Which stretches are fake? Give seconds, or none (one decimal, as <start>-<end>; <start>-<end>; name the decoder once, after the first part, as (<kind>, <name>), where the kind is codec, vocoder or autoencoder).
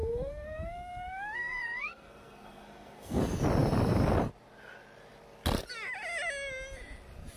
0.0-3.2 (codec, SNAC)